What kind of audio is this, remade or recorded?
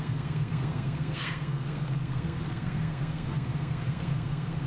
remade